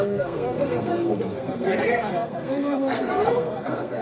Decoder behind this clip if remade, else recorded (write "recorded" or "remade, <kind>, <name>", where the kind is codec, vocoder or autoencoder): remade, codec, SNAC